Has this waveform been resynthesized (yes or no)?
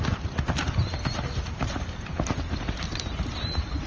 yes